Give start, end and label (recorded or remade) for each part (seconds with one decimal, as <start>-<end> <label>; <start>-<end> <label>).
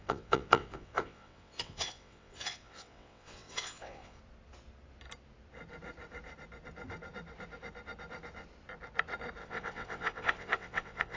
0.0-4.2 remade; 4.2-9.4 recorded; 9.4-11.2 remade